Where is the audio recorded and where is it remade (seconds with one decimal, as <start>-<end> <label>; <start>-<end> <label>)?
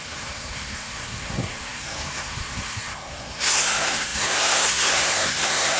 0.0-5.8 remade